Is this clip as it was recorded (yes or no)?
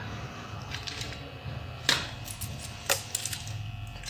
yes